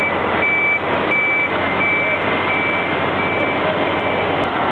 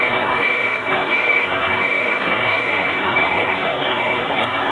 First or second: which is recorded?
first